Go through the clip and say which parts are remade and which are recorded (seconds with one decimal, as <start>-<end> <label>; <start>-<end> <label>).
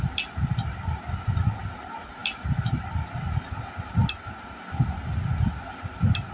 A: 0.0-6.3 recorded